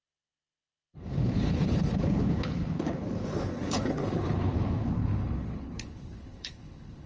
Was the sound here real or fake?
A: fake